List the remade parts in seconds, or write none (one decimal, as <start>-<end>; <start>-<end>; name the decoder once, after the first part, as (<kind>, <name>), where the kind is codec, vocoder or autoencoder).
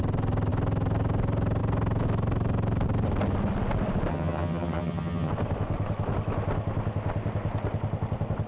4.1-5.3 (vocoder, HiFi-GAN)